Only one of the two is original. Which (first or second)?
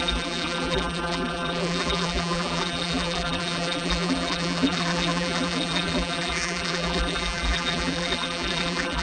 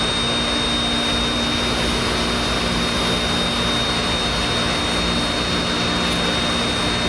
second